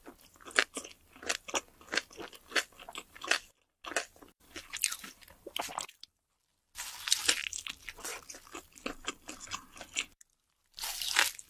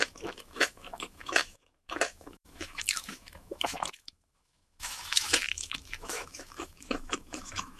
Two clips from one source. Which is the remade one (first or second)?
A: second